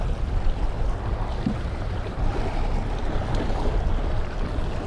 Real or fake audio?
real